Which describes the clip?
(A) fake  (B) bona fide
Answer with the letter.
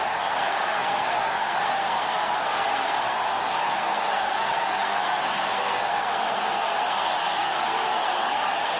A